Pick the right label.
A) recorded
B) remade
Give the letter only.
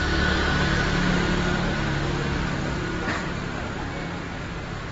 A